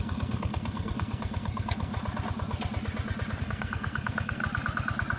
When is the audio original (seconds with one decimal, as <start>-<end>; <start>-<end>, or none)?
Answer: 1.9-3.4; 4.4-5.2